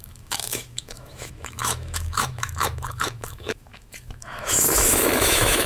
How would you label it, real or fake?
fake